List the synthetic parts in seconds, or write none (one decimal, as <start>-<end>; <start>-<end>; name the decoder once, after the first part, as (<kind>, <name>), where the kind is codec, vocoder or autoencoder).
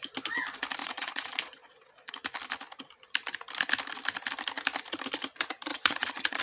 0.8-2.1 (vocoder, Vocos); 5.7-6.4